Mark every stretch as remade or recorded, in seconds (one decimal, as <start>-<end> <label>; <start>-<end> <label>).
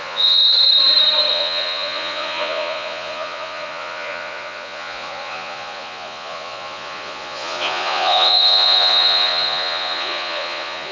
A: 0.0-0.4 remade; 0.4-1.3 recorded; 1.3-10.9 remade